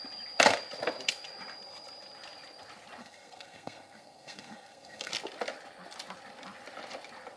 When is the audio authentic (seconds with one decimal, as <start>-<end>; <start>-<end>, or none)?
0.0-3.0; 5.1-7.4